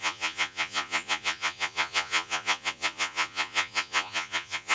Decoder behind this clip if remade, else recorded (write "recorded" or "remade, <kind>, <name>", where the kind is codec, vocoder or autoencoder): remade, vocoder, Vocos